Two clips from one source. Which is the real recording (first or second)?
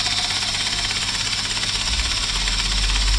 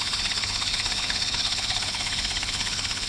first